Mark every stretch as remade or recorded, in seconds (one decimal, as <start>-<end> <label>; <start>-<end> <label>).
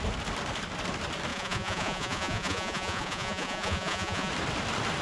0.0-1.3 recorded; 1.3-4.3 remade; 4.3-5.0 recorded